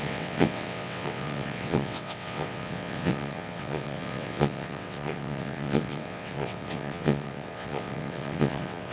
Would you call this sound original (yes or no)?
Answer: no